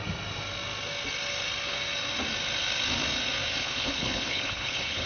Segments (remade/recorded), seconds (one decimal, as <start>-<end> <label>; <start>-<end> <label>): 0.0-3.6 recorded; 3.6-5.1 remade